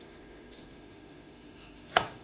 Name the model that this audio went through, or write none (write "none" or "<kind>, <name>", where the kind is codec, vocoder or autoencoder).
autoencoder, DAC-VAE